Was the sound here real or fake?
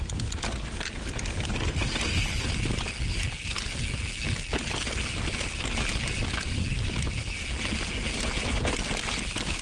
real